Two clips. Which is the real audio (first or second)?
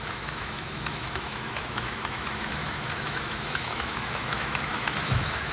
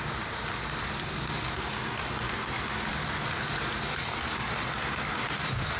second